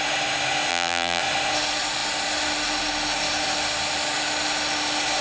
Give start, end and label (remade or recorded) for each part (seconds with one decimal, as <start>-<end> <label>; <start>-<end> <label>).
0.0-0.7 recorded; 0.7-1.2 remade; 1.2-5.2 recorded